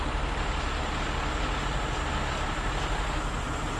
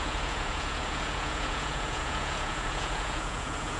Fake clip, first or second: second